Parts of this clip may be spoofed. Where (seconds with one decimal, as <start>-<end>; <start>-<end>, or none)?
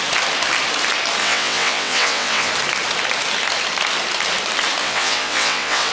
1.2-2.5; 4.8-5.9